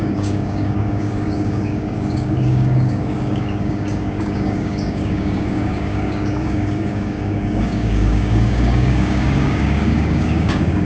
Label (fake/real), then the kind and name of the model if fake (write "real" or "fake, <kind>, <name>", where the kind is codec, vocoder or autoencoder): fake, codec, DAC